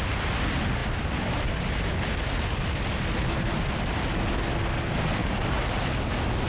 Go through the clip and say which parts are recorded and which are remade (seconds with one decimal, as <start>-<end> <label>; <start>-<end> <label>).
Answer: 0.0-0.8 recorded; 0.8-1.7 remade; 1.7-5.2 recorded; 5.2-5.7 remade; 5.7-6.5 recorded

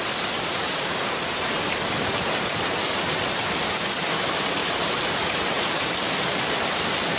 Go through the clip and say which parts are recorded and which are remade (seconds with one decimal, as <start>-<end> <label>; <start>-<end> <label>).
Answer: 0.0-0.5 recorded; 0.5-3.2 remade; 3.2-4.6 recorded; 4.6-6.8 remade; 6.8-7.2 recorded

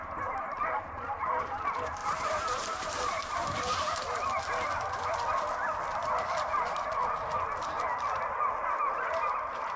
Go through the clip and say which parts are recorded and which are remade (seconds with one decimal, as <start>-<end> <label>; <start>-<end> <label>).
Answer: 0.0-2.0 recorded; 2.0-4.4 remade; 4.4-9.8 recorded

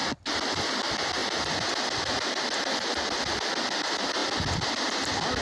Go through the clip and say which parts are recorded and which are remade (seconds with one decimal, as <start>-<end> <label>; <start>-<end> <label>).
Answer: 0.0-5.4 recorded

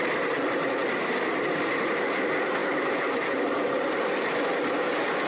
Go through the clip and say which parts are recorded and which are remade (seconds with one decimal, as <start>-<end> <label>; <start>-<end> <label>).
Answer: 0.0-5.3 recorded

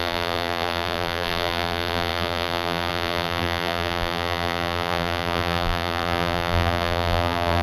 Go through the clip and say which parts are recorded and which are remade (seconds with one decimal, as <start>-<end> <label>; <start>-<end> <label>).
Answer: 0.0-7.6 remade